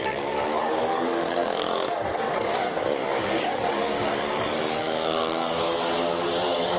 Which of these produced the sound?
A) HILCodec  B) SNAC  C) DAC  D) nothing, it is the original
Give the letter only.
C